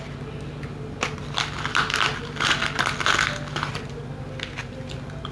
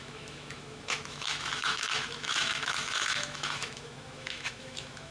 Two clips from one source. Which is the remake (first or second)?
second